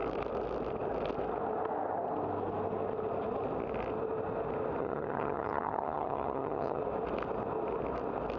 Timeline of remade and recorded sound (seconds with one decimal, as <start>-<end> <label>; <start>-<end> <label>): 0.0-4.8 recorded; 4.8-6.8 remade; 6.8-8.4 recorded